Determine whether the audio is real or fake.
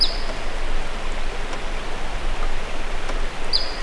real